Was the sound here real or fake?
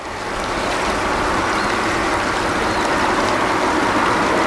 real